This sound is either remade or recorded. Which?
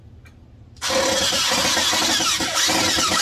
recorded